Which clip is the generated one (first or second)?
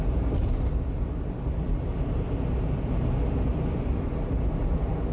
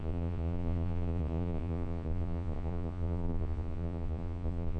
second